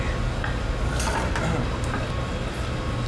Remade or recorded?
recorded